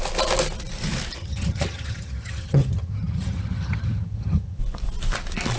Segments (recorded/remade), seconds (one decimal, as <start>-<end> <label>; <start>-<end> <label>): 0.0-1.2 recorded; 1.2-4.6 remade; 4.6-5.6 recorded